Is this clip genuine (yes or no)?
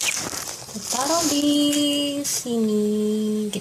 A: yes